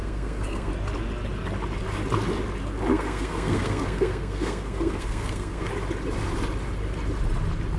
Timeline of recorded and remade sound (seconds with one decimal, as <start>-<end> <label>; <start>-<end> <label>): 0.0-0.7 remade; 0.7-2.9 recorded; 2.9-5.7 remade; 5.7-7.8 recorded